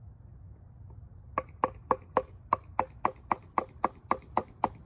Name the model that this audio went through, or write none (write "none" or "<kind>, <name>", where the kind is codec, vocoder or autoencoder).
none